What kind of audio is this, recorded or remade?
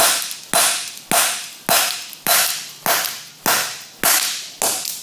recorded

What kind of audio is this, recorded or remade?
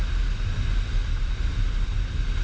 recorded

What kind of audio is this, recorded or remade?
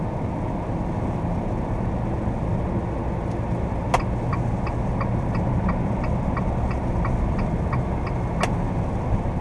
recorded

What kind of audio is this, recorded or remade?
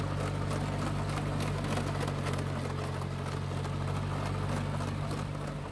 recorded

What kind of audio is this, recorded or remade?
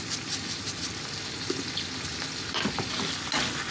recorded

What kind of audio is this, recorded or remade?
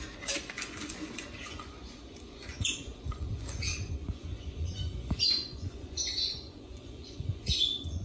remade